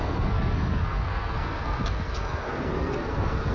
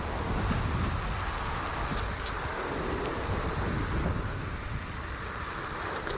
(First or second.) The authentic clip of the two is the second